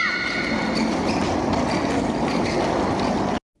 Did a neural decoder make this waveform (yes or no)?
no